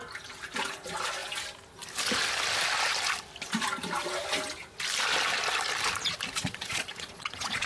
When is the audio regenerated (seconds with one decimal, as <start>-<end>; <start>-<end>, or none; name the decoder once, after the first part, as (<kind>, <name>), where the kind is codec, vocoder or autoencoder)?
6.4-7.7 (vocoder, Vocos)